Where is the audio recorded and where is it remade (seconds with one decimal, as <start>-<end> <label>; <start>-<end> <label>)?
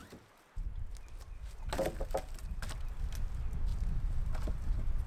0.0-5.1 recorded